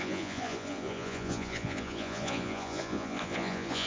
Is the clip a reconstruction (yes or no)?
yes